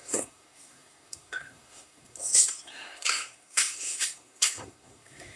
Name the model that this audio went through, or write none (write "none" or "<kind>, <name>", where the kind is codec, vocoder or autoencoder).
codec, SNAC